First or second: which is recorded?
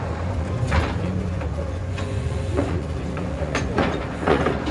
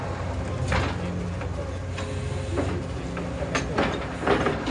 second